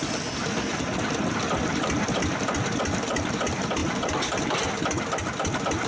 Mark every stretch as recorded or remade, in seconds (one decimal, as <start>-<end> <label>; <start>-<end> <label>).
0.0-0.7 recorded; 0.7-2.8 remade; 2.8-3.8 recorded; 3.8-4.4 remade; 4.4-5.9 recorded